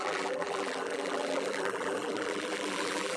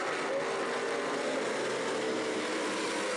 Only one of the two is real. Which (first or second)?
second